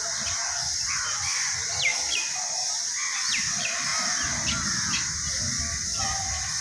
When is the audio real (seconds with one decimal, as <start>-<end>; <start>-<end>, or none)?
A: 0.0-6.6